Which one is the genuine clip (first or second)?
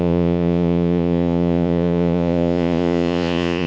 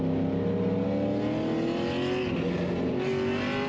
second